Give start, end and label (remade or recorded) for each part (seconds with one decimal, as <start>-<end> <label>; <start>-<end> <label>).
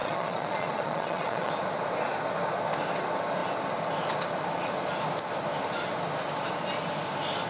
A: 0.0-1.5 remade; 1.5-7.5 recorded